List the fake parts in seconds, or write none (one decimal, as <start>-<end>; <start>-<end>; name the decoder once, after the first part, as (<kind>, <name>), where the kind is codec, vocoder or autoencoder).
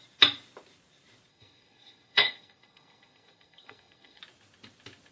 1.3-4.2 (codec, SNAC)